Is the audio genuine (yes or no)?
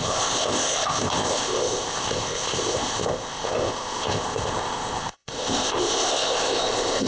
no